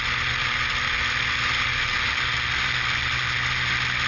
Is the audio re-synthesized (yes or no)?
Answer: no